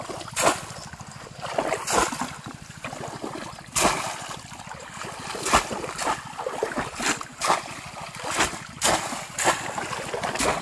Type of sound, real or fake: real